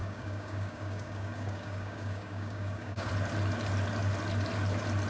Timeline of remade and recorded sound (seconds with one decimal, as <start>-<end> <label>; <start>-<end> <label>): 0.0-3.1 remade; 3.1-5.1 recorded